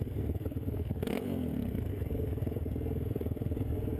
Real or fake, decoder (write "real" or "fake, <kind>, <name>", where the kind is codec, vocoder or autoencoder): fake, codec, SNAC